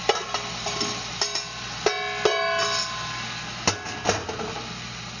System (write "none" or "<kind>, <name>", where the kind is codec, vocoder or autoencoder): none